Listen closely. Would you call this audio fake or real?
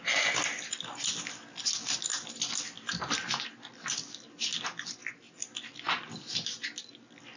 real